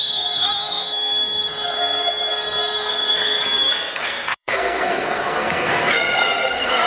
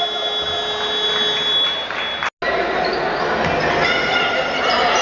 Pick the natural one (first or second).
second